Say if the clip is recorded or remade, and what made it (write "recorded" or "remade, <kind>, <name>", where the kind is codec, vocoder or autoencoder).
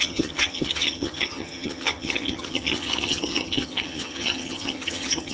remade, vocoder, HiFi-GAN